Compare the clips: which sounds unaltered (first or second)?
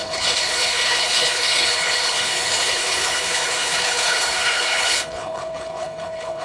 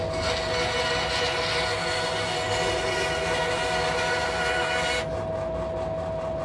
second